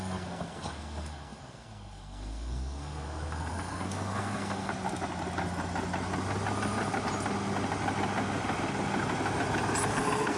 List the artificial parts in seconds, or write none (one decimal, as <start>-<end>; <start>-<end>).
0.0-4.7; 9.9-10.4

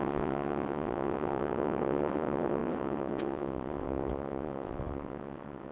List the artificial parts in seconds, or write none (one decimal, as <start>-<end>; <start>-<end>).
0.0-5.7

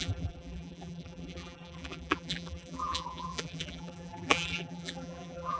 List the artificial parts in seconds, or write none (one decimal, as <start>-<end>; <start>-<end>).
0.0-5.6

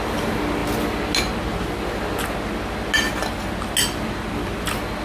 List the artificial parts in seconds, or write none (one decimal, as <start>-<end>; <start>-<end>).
none

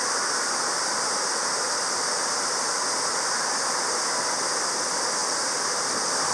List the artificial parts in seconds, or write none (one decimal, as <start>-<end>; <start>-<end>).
none

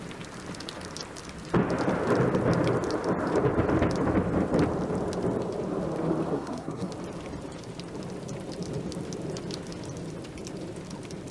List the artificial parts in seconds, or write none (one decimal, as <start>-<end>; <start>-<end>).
6.3-6.9

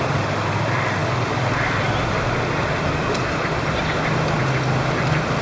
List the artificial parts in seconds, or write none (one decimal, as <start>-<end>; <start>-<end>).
none

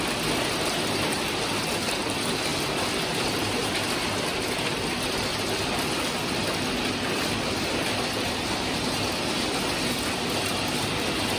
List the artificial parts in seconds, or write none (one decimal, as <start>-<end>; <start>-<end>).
none